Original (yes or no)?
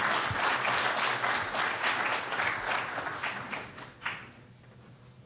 yes